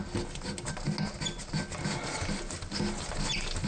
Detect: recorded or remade recorded